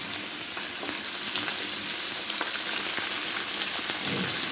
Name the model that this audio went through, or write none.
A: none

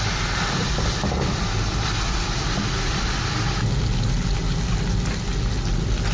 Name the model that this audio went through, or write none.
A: none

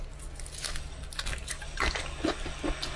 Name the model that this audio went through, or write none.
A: none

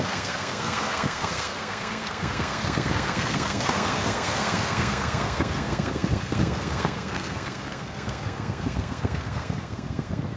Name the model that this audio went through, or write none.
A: codec, SNAC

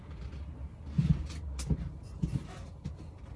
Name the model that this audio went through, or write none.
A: none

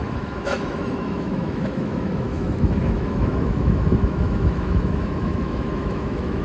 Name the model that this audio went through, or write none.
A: autoencoder, DAC-VAE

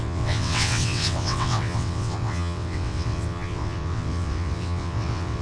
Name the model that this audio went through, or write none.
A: vocoder, WaveNeXt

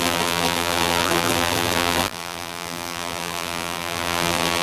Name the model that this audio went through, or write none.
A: vocoder, BigVGAN v2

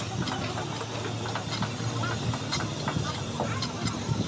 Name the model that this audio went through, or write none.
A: none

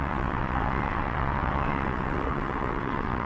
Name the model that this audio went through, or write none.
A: vocoder, WaveNeXt